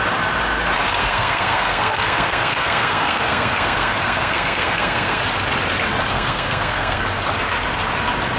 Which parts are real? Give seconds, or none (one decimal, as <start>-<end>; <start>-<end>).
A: 0.0-1.0; 5.2-6.1; 7.0-8.4